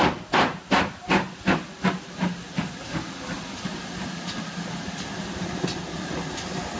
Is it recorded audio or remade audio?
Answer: recorded